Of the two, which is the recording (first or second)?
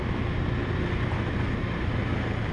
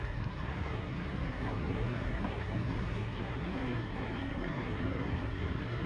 first